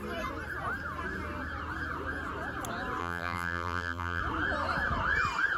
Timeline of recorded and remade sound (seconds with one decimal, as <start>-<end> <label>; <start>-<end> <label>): 0.0-3.0 recorded; 3.0-4.2 remade; 4.2-5.6 recorded